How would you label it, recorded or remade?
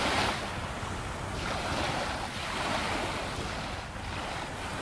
recorded